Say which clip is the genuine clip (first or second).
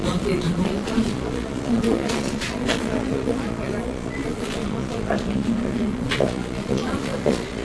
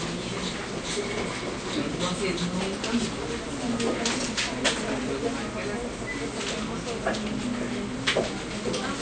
second